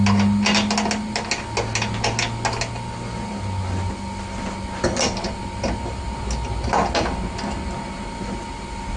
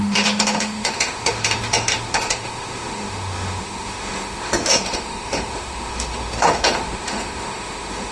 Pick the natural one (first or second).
first